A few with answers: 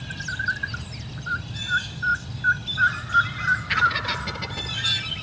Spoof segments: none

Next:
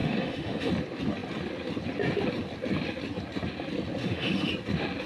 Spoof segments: 0.0-0.7 (autoencoder, DAC-VAE); 4.0-4.5

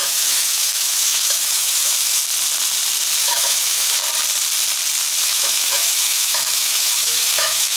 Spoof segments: 0.0-2.2 (autoencoder, DAC-VAE); 3.2-4.0; 5.2-7.8

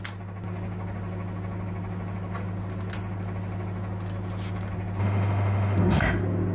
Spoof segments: 5.0-6.0 (autoencoder, DAC-VAE)

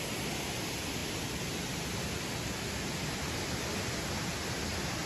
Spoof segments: none